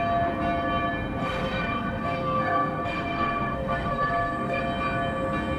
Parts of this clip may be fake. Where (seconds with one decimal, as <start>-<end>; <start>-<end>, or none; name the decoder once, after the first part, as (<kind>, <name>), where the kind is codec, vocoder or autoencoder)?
1.2-4.6 (codec, SNAC)

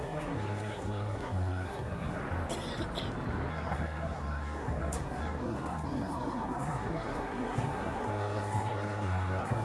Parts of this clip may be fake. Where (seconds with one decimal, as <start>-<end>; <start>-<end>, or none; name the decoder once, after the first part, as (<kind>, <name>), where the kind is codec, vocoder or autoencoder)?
0.0-2.2 (codec, SNAC); 3.5-9.6

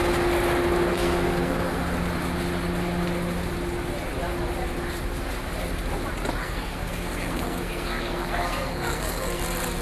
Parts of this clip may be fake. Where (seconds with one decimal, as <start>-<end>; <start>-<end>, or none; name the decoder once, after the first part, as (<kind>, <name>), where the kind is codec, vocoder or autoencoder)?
0.9-1.8 (codec, SNAC); 6.4-9.4

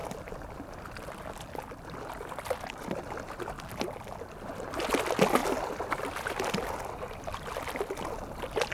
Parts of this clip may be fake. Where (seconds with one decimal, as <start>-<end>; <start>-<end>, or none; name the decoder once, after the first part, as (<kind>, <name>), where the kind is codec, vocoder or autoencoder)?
none

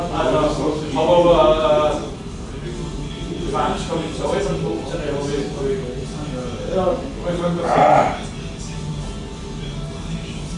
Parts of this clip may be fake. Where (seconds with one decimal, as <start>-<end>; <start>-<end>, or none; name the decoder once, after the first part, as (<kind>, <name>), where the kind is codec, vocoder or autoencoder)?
none

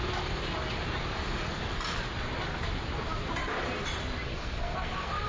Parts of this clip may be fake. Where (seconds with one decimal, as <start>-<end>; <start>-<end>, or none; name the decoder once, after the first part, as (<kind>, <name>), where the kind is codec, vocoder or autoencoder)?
4.3-5.3 (codec, SNAC)

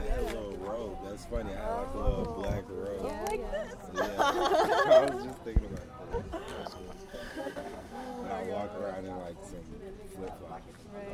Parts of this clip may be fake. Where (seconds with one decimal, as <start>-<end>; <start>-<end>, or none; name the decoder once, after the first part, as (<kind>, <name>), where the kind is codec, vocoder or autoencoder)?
6.5-8.3 (codec, SNAC)